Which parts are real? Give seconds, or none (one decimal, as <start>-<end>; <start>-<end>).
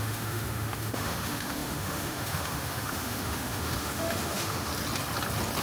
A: 4.7-5.6